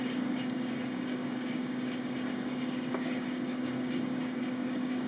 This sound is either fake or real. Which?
fake